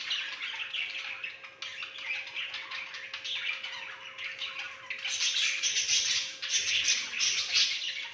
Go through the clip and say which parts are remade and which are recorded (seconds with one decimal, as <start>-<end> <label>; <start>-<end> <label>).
0.0-8.1 recorded